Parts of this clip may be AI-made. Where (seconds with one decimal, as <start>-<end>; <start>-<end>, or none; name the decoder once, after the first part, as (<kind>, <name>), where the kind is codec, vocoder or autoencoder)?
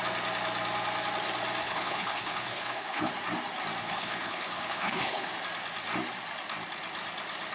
1.6-3.1 (codec, HILCodec); 3.8-5.3